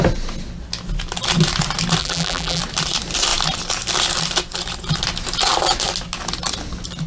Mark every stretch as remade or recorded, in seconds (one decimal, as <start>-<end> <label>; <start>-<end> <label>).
0.0-2.0 recorded; 2.0-2.6 remade; 2.6-7.1 recorded